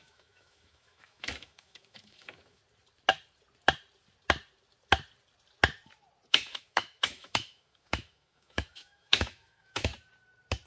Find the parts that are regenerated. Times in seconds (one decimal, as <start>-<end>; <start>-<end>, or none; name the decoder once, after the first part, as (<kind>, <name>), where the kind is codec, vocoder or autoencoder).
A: 0.0-2.6 (autoencoder, DAC-VAE); 6.3-9.9